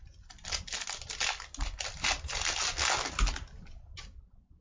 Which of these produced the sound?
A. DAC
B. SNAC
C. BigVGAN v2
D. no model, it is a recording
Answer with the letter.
D